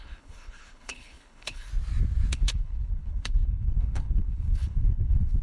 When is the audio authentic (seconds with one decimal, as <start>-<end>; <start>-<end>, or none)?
1.7-2.3